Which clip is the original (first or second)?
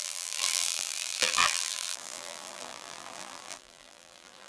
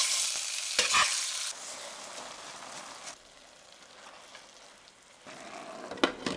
second